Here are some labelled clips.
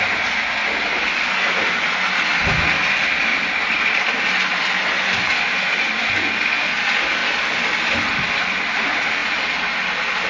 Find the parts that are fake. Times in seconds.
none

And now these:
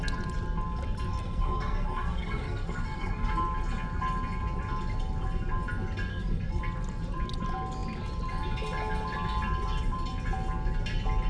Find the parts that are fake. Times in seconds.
1.1-3.3 (codec, SNAC); 6.1-6.6

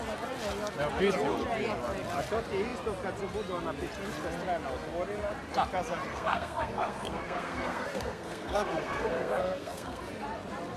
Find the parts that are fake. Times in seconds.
6.1-10.0 (codec, SNAC)

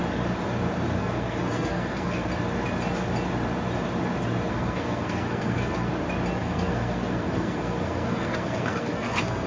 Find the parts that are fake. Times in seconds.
1.0-2.3 (codec, SNAC); 4.5-5.9; 6.4-9.5